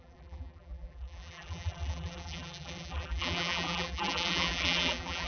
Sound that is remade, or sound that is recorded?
remade